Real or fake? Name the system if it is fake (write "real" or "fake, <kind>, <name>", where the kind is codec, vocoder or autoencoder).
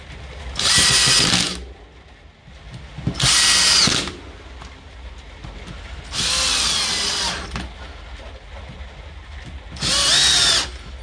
real